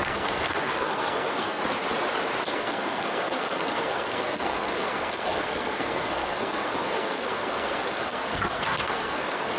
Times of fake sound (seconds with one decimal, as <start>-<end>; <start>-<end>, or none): 0.0-1.6; 2.5-9.6